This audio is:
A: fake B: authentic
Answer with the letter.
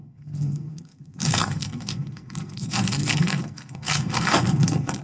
A